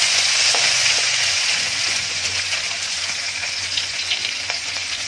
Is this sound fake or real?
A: fake